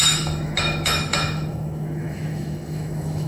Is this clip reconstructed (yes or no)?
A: yes